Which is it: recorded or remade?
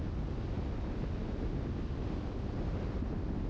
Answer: recorded